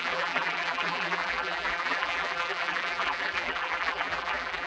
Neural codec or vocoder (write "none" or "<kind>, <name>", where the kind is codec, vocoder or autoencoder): vocoder, BigVGAN v2